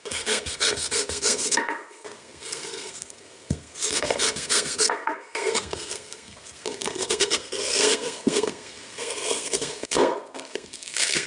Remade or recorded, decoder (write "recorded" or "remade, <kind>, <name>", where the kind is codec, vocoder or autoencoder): remade, codec, SNAC